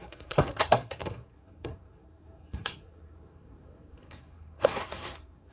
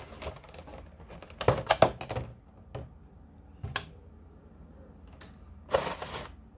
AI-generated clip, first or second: first